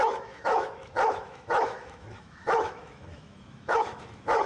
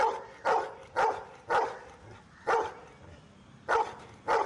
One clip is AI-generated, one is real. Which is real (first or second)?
second